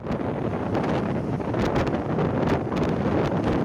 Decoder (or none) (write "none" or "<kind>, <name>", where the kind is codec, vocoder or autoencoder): none